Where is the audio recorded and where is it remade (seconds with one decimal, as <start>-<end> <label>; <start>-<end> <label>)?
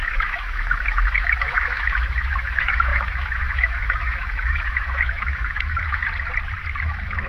0.0-6.0 remade; 6.0-6.8 recorded; 6.8-7.3 remade